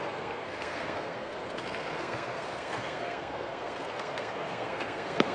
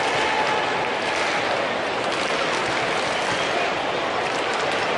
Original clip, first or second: second